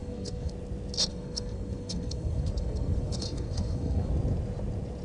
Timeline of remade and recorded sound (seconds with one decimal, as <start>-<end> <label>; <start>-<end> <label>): 0.0-0.5 remade; 0.5-1.1 recorded; 1.1-4.1 remade; 4.1-5.0 recorded